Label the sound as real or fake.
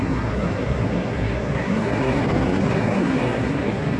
fake